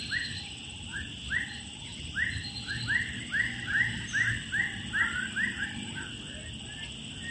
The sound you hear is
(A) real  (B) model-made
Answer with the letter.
A